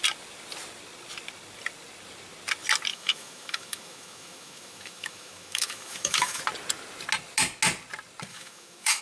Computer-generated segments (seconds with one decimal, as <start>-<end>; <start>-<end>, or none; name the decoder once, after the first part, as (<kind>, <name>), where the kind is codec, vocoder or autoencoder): 2.9-6.4 (autoencoder, DAC-VAE); 8.3-9.0